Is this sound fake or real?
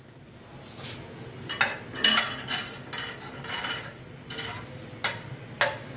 real